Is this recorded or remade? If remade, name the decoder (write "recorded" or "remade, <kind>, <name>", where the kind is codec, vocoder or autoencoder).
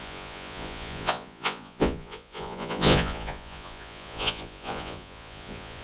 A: remade, vocoder, Vocos